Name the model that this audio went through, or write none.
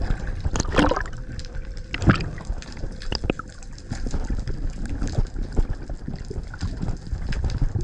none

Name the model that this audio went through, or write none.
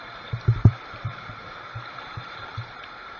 vocoder, BigVGAN v2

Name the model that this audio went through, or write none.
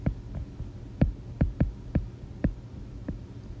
none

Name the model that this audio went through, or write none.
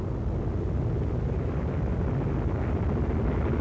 none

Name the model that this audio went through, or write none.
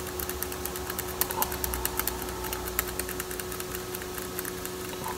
none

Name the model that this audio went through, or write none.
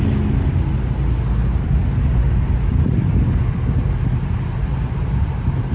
none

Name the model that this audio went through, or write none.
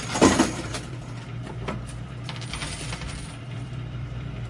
vocoder, BigVGAN v2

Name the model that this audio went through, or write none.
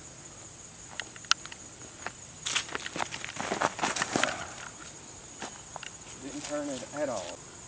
none